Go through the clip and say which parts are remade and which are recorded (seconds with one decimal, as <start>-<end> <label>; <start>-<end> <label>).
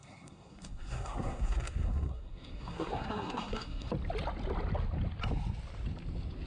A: 0.0-3.9 remade; 3.9-6.5 recorded